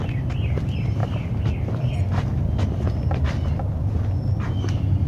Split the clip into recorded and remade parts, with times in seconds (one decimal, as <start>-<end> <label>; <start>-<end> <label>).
0.0-5.1 recorded